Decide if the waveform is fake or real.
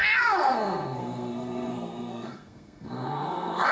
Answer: fake